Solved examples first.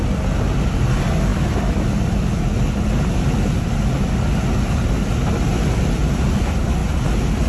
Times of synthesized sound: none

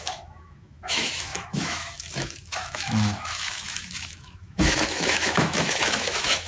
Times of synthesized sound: 0.0-6.5

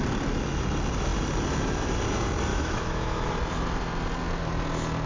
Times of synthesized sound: 2.5-3.3

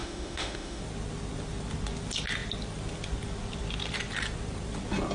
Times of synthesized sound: 0.0-0.8

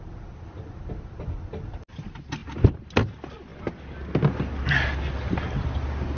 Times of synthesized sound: none